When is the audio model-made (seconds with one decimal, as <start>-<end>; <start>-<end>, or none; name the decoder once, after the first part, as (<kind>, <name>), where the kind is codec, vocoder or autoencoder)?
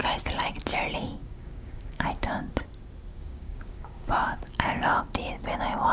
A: 1.2-2.3 (codec, DAC); 3.1-5.0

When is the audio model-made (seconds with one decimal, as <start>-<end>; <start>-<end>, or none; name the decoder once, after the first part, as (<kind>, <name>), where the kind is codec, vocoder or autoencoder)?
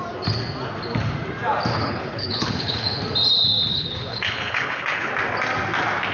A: 1.7-3.0 (codec, HILCodec); 3.7-5.1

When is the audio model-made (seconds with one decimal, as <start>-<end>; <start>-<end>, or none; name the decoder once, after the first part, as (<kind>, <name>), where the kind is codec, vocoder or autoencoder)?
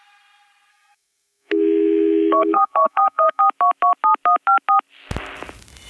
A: 0.7-3.4 (codec, SNAC)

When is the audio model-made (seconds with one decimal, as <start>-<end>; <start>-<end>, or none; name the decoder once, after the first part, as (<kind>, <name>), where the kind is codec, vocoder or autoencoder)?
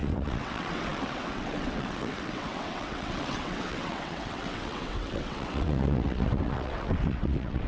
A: 0.0-7.7 (vocoder, WaveNeXt)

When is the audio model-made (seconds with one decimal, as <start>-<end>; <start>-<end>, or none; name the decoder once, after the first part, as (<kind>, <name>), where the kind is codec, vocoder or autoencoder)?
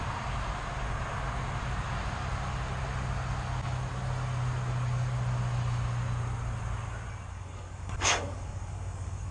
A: 7.3-9.3 (codec, DAC)